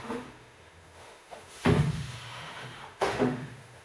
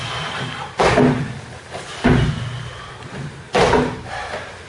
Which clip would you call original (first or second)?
second